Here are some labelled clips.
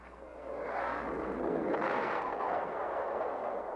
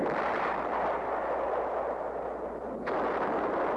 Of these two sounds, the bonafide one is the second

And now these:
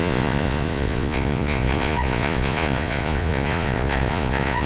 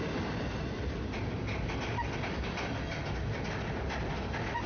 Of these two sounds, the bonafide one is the second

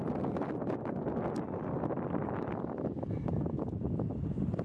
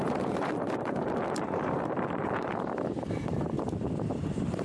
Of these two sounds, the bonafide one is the first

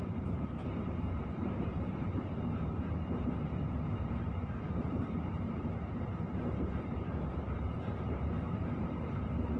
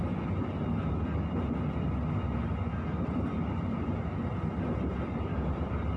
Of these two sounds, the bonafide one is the second